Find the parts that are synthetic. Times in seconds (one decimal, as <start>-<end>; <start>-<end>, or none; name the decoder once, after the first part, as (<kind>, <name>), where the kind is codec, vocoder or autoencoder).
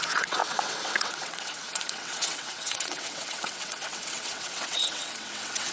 0.0-5.7 (vocoder, WaveNeXt)